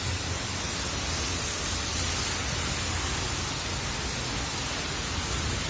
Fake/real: real